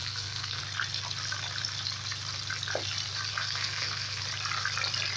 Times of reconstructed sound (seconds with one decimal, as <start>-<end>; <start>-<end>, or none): 0.0-0.6; 3.3-4.2